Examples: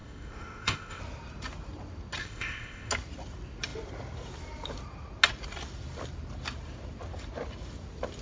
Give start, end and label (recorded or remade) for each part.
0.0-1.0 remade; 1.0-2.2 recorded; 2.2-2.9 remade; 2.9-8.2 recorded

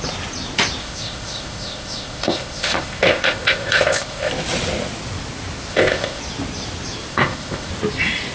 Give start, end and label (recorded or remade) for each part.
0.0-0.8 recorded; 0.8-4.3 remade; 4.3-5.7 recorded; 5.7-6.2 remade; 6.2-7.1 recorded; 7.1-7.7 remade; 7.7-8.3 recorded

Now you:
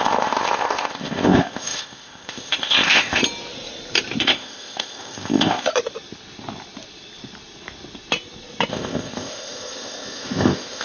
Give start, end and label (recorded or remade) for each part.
0.0-3.2 remade; 3.2-4.2 recorded; 4.2-5.7 remade; 5.7-8.7 recorded; 8.7-10.8 remade

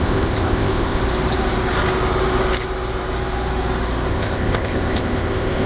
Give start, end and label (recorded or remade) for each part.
0.0-1.0 remade; 1.0-4.1 recorded; 4.1-5.7 remade